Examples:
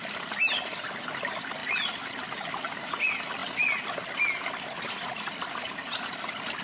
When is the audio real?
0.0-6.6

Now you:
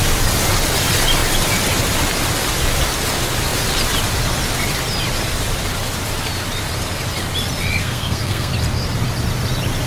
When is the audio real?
0.0-7.8; 8.5-9.9

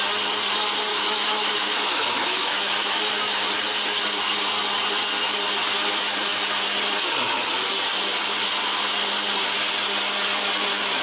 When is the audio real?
0.0-0.9; 3.4-11.0

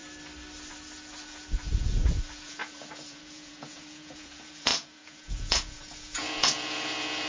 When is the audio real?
0.0-0.7